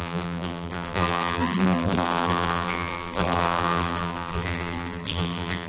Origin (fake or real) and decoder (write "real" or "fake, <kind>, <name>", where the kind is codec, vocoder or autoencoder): fake, vocoder, BigVGAN v2